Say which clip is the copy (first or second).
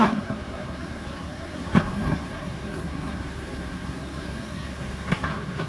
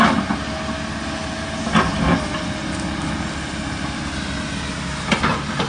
first